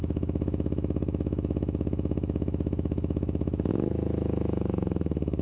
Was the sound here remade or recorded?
remade